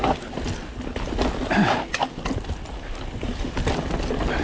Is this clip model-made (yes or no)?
no